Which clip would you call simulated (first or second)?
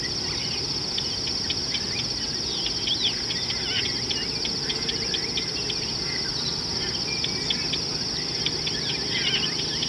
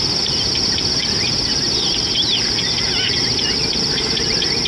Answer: second